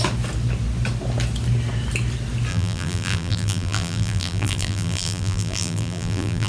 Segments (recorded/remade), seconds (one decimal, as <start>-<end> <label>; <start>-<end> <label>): 0.0-2.5 recorded; 2.5-6.5 remade